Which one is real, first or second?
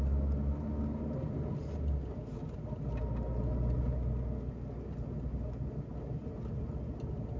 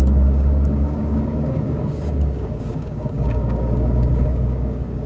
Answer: first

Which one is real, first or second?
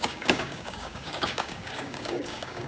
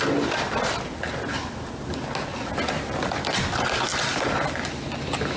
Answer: second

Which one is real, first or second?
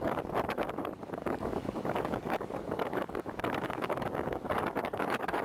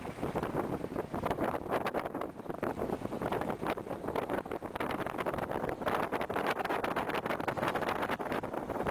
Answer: second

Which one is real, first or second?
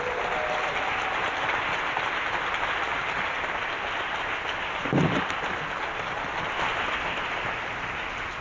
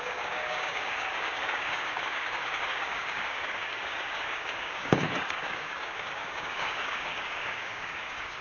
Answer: first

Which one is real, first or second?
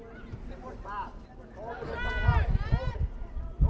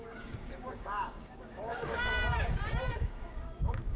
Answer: first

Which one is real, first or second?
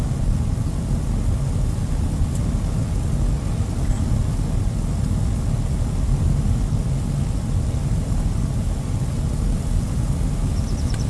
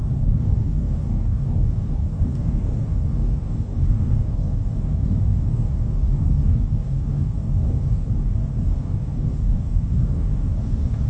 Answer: first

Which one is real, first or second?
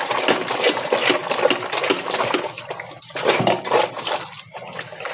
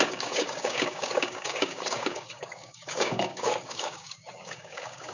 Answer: first